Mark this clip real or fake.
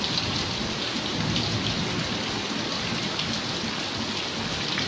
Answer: real